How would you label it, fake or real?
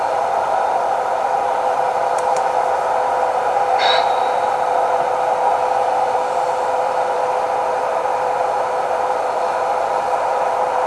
fake